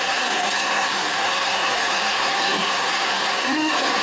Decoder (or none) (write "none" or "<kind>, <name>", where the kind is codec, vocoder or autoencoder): codec, SNAC